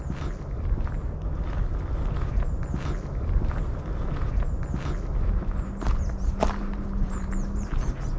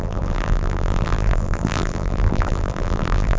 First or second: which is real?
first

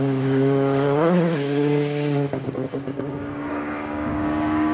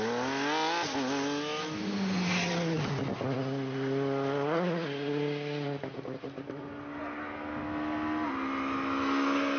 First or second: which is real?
second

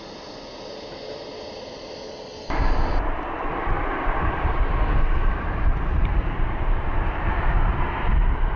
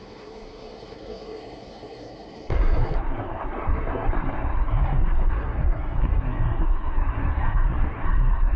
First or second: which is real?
first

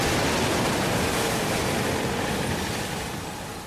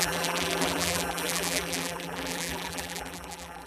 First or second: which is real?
first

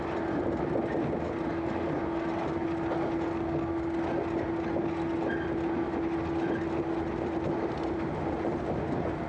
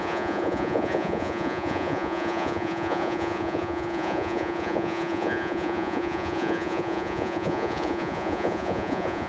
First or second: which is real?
first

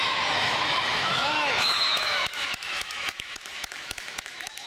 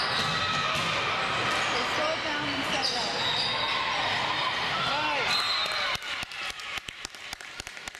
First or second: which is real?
second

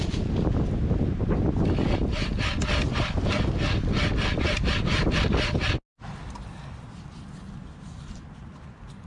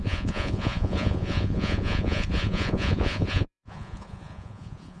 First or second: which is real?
first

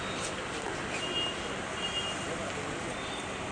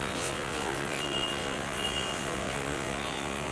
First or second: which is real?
first